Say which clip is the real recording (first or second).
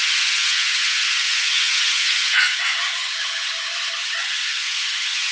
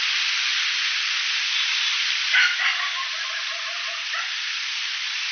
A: second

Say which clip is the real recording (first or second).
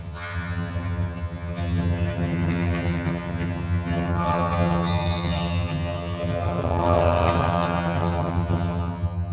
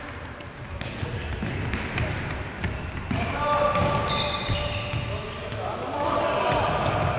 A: second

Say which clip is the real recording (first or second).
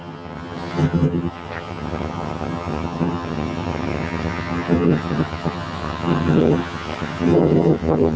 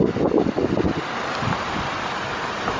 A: second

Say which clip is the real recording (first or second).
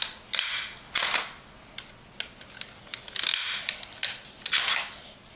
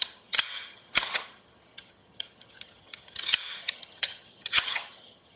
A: first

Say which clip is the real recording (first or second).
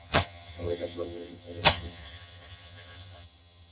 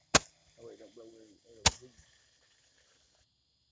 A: second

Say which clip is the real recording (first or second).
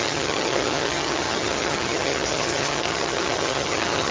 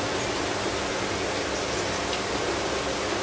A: second